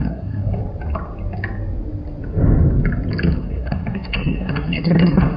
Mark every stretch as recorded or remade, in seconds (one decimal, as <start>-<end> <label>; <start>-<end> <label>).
0.0-0.6 remade; 0.6-3.4 recorded; 3.4-5.4 remade